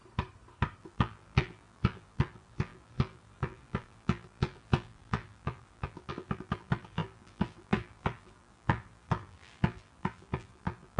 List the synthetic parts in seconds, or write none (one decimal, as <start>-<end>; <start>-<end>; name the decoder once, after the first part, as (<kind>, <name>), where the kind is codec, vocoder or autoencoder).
0.8-11.0 (vocoder, BigVGAN v2)